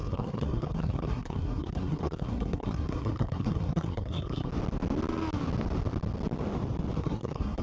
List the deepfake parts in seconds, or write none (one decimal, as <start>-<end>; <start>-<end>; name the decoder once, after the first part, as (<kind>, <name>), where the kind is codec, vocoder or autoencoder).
0.0-4.5 (codec, SNAC); 7.0-7.6